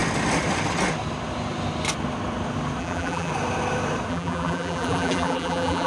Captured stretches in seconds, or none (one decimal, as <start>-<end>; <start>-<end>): 0.0-2.8; 3.3-4.1